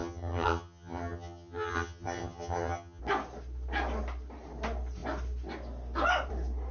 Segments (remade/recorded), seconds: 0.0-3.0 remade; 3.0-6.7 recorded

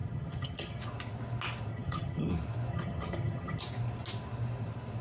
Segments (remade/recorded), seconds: 0.0-0.8 remade; 0.8-1.7 recorded; 1.7-2.3 remade; 2.3-2.7 recorded; 2.7-3.6 remade; 3.6-5.0 recorded